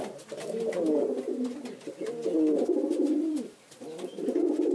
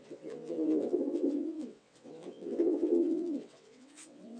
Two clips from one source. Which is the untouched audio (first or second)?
first